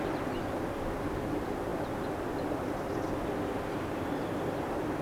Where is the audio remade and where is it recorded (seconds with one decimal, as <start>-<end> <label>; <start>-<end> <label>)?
0.0-5.0 recorded